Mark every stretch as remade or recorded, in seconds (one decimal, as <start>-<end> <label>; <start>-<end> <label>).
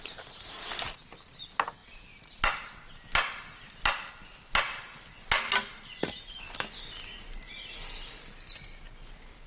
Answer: 0.0-9.5 recorded